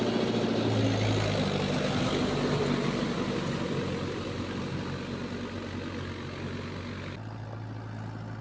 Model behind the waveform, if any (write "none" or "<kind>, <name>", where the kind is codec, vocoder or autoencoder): none